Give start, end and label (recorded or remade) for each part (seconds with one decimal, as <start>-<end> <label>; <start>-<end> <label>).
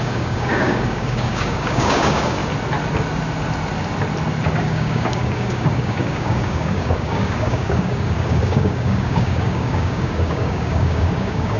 0.0-2.4 remade; 2.4-4.6 recorded; 4.6-11.6 remade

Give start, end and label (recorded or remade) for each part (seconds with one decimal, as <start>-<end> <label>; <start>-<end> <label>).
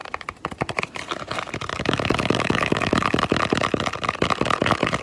0.0-1.7 recorded; 1.7-3.2 remade; 3.2-5.0 recorded